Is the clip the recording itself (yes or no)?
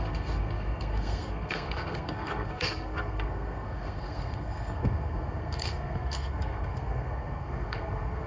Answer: no